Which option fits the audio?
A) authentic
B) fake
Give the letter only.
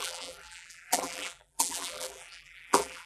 B